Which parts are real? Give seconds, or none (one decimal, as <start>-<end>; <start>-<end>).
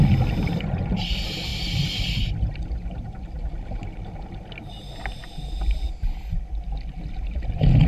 0.0-7.9